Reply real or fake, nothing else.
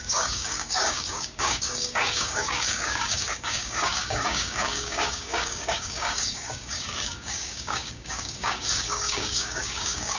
fake